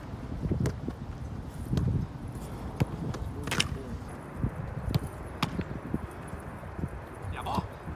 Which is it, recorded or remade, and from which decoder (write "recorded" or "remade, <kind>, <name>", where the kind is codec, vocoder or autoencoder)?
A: recorded